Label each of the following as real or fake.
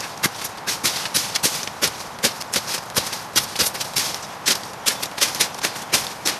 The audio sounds real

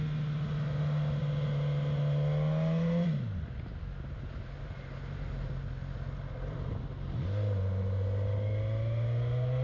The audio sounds real